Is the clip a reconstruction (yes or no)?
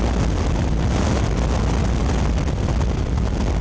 no